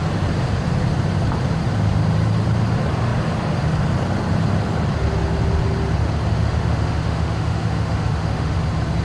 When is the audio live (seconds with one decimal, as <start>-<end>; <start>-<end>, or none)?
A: 0.0-6.3; 8.6-9.0